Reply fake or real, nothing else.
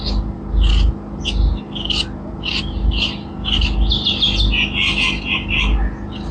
real